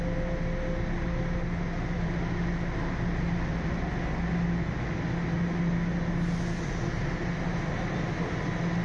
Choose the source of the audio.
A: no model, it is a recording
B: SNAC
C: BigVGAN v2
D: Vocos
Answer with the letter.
A